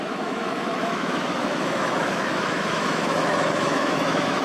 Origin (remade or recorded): remade